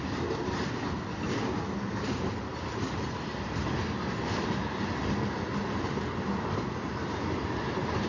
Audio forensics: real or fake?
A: real